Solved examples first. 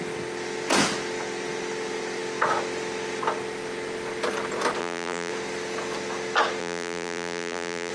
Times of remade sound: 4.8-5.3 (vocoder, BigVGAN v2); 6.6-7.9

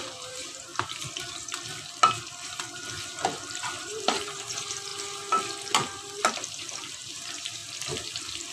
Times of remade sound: 0.0-0.7 (vocoder, BigVGAN v2); 3.8-4.9; 6.5-7.6

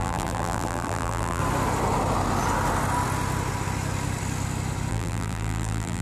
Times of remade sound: 0.0-1.4 (vocoder, BigVGAN v2); 4.9-6.0

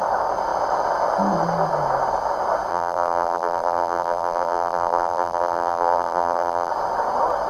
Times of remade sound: 2.7-6.7 (vocoder, BigVGAN v2)

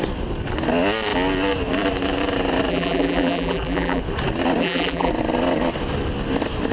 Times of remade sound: 2.7-4.0 (vocoder, BigVGAN v2); 4.6-5.1

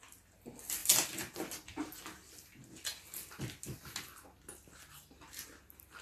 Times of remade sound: none